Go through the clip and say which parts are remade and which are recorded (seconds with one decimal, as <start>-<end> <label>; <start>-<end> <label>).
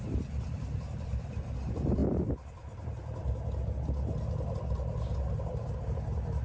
0.0-2.0 remade; 2.0-5.8 recorded; 5.8-6.4 remade